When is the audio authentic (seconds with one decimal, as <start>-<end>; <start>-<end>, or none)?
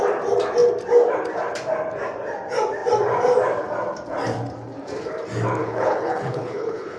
0.0-5.6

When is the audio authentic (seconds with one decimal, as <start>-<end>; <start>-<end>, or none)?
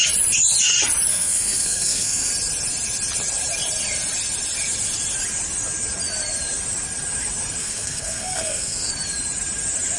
0.0-1.1; 2.3-7.6; 8.9-10.0